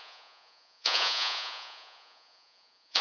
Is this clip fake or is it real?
fake